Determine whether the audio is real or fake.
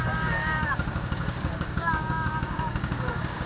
fake